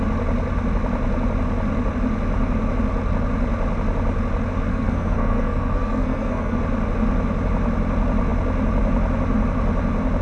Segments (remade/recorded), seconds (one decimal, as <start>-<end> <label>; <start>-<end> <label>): 0.0-4.7 recorded; 4.7-6.6 remade; 6.6-10.2 recorded